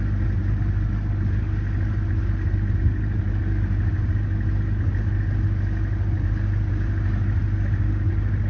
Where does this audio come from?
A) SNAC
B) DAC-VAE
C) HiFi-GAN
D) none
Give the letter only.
D